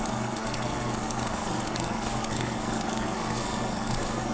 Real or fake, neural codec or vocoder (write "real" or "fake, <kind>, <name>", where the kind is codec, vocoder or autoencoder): fake, codec, SNAC